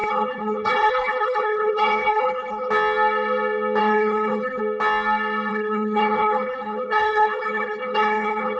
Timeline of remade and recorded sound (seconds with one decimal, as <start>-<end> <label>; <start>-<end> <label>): 0.0-2.7 remade; 2.7-3.8 recorded; 3.8-4.6 remade; 4.6-5.5 recorded; 5.5-8.6 remade